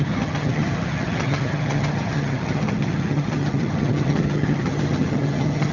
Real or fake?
fake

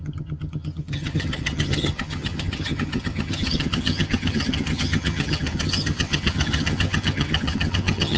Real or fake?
fake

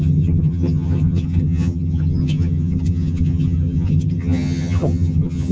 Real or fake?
fake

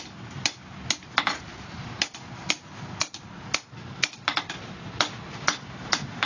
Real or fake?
real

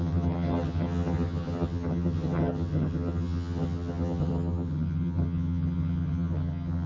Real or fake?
fake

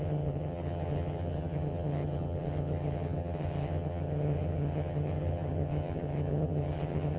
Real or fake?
fake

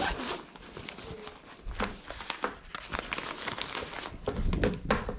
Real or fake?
real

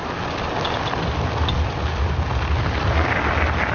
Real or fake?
real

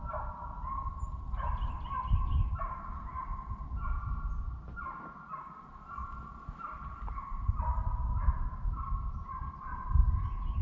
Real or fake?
real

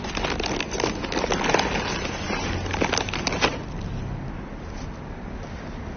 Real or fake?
real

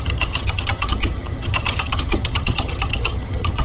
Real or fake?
fake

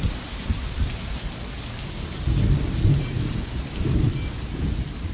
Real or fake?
real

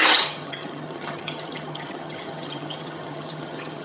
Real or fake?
fake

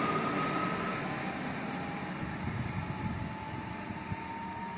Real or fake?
real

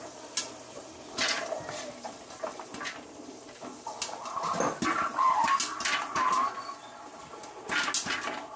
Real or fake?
real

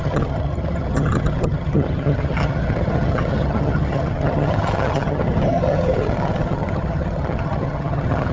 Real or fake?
fake